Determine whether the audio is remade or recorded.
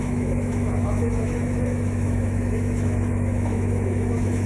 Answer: remade